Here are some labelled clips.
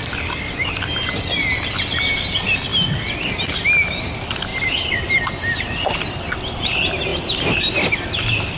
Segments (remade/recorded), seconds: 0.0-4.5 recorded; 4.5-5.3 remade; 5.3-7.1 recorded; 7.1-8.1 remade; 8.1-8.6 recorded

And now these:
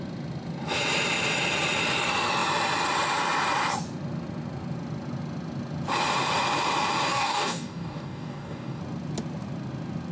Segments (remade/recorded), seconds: 0.0-7.1 recorded; 7.1-8.8 remade; 8.8-10.1 recorded

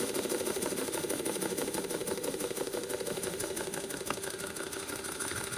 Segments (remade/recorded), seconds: 0.0-5.6 remade

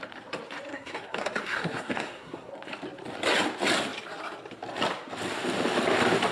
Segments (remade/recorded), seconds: 0.0-0.7 recorded; 0.7-2.5 remade; 2.5-6.3 recorded

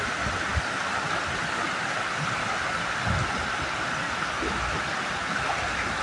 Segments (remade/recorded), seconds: 0.0-6.0 recorded